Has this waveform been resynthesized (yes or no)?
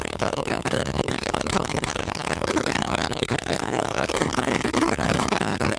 yes